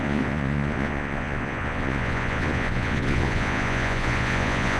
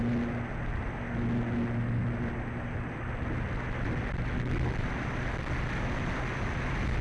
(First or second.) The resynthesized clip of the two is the first